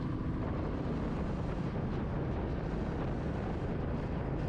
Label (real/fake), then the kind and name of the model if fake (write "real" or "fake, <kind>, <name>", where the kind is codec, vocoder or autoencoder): real